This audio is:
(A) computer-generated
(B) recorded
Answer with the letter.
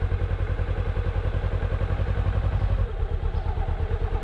B